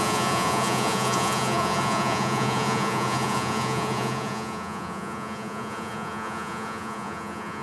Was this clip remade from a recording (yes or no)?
yes